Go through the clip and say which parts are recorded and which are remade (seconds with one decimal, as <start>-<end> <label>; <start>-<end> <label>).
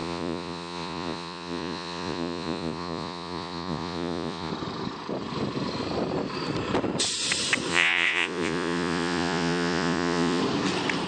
0.0-4.5 remade; 4.5-7.7 recorded; 7.7-10.4 remade; 10.4-11.1 recorded